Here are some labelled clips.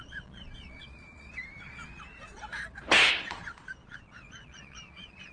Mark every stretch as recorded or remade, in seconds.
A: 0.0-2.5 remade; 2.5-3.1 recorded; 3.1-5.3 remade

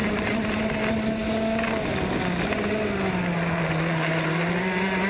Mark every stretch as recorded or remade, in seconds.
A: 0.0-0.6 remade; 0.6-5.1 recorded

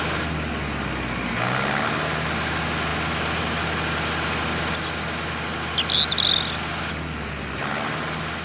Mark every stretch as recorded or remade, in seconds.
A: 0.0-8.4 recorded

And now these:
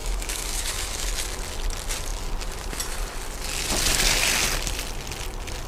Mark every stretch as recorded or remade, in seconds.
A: 0.0-1.1 remade; 1.1-5.7 recorded

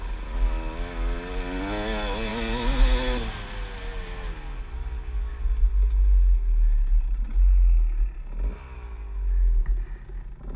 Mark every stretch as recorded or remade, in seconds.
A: 0.0-10.6 recorded

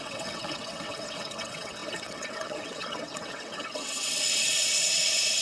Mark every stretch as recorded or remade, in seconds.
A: 0.0-5.4 remade

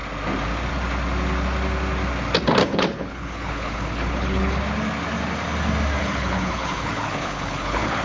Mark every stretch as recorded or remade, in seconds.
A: 0.0-2.6 recorded; 2.6-4.6 remade; 4.6-6.0 recorded; 6.0-8.0 remade